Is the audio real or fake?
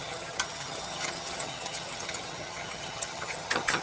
fake